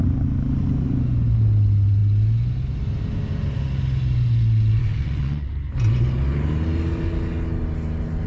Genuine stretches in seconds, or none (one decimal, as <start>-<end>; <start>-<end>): 0.0-4.8; 5.5-8.3